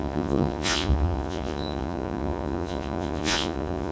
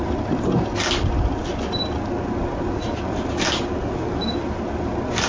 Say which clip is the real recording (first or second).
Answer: second